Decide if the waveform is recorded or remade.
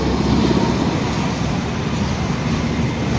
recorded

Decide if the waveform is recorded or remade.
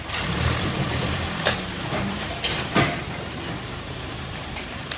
remade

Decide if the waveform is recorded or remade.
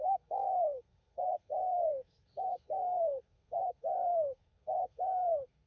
remade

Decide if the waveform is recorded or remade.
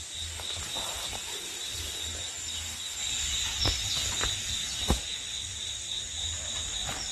recorded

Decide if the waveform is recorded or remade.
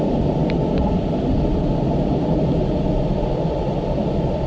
recorded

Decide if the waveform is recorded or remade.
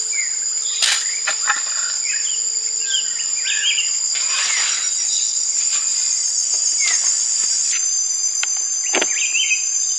recorded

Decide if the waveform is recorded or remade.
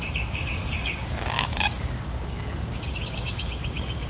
remade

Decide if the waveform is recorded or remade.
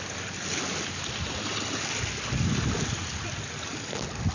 recorded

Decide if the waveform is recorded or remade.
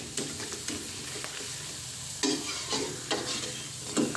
recorded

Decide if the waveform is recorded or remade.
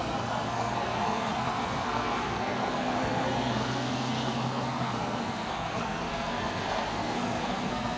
remade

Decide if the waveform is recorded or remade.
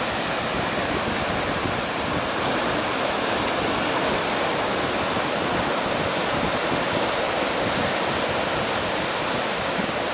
recorded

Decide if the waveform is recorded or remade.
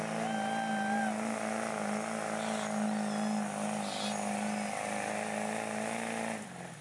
recorded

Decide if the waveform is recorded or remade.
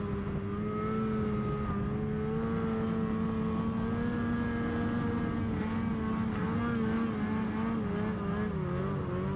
recorded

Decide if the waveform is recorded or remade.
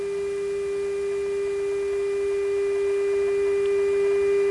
recorded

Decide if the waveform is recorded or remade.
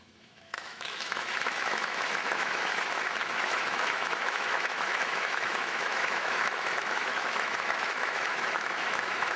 remade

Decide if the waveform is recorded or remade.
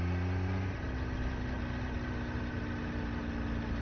recorded